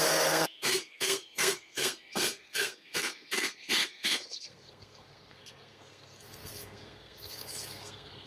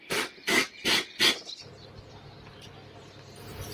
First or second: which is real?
second